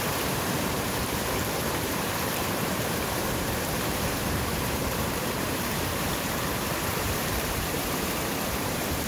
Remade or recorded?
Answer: remade